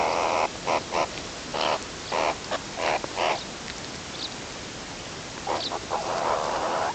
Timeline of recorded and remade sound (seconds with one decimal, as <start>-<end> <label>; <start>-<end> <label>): 0.0-6.9 recorded